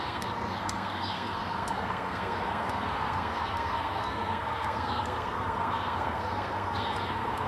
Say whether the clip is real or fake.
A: fake